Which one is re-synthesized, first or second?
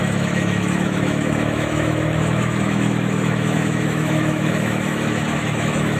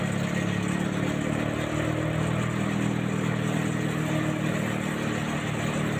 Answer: first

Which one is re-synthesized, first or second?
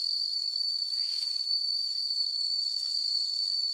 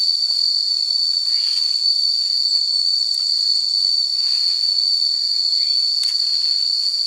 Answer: first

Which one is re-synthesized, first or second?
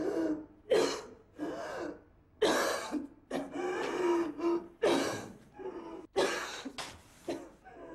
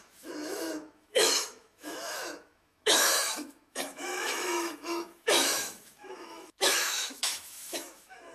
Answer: second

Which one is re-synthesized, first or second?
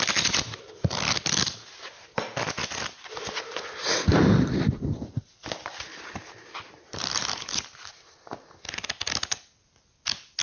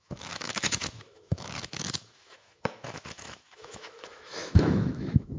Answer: second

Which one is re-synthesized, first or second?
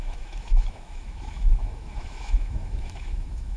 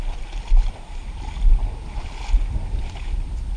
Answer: first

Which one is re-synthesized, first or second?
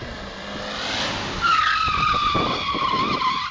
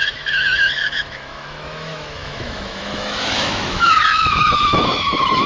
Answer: second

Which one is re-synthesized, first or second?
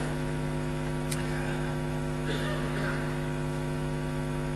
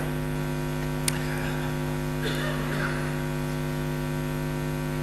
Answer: first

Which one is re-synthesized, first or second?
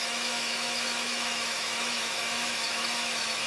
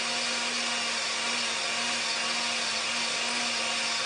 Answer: first